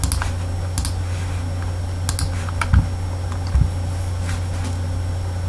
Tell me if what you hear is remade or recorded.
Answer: recorded